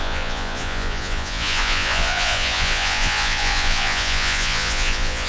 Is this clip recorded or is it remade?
remade